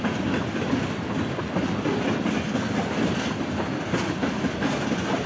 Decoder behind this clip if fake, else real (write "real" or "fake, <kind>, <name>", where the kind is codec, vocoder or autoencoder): real